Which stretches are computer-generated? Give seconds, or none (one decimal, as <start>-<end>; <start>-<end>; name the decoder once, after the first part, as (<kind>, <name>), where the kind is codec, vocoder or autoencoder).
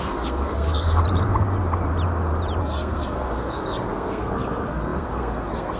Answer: 0.0-1.0 (codec, SNAC); 2.6-5.8